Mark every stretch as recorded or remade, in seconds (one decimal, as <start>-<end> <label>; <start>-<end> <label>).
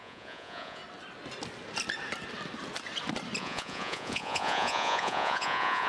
0.0-0.8 remade; 0.8-3.4 recorded; 3.4-5.9 remade